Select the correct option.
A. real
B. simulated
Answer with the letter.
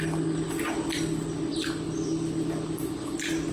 A